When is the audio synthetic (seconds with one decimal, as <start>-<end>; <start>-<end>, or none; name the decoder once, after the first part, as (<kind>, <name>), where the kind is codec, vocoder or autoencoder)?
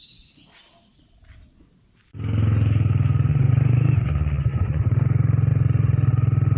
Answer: 3.3-4.8 (vocoder, Vocos)